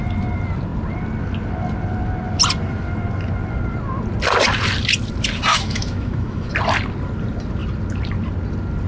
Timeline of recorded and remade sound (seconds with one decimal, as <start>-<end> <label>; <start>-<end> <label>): 0.0-5.5 recorded; 5.5-6.5 remade; 6.5-8.9 recorded